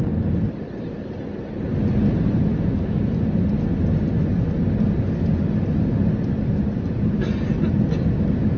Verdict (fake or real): real